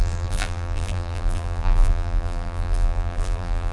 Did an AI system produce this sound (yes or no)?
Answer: yes